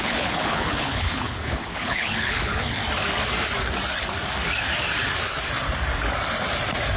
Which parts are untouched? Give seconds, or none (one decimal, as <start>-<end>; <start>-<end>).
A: 2.8-7.0